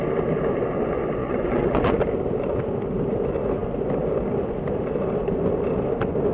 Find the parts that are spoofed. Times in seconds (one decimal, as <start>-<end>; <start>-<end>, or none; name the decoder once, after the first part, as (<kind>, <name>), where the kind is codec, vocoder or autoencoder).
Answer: 1.2-2.0 (vocoder, Vocos)